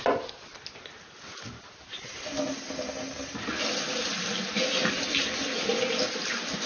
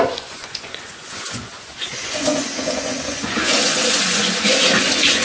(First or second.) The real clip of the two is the first